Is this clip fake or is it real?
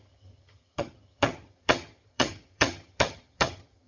fake